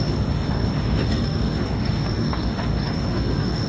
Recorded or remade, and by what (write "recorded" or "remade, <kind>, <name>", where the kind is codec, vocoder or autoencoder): remade, autoencoder, DAC-VAE